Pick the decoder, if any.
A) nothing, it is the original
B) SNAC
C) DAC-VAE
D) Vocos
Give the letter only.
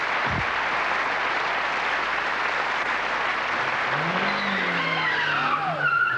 A